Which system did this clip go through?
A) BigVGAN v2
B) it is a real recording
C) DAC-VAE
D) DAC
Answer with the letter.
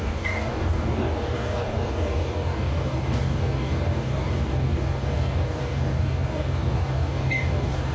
D